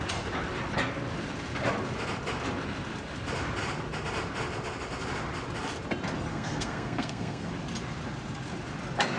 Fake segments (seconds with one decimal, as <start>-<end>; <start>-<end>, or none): 6.3-7.5